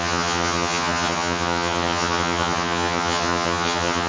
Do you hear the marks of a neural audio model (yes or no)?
yes